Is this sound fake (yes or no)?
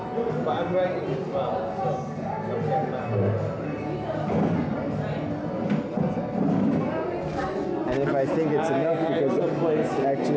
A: no